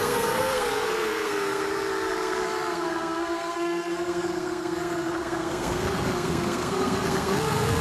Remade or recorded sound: remade